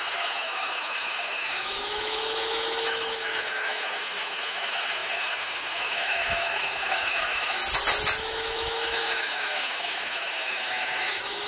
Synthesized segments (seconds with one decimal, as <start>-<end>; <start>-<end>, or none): 0.0-7.6; 8.2-11.5